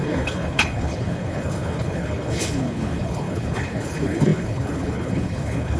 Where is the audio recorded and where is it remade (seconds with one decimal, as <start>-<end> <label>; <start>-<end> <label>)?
0.0-5.8 remade